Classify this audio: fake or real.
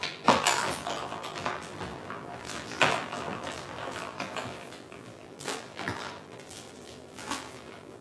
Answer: fake